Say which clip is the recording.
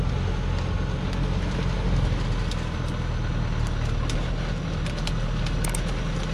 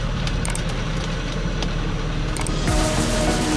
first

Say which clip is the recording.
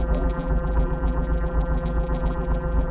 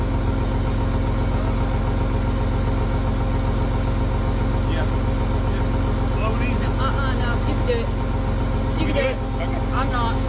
second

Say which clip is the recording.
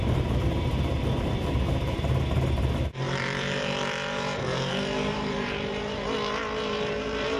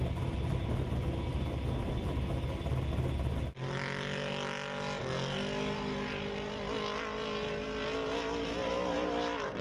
second